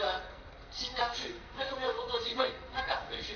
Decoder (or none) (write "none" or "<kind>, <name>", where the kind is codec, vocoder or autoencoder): codec, SNAC